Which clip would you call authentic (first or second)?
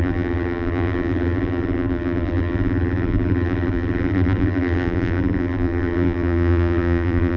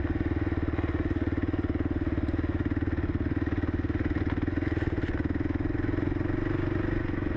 second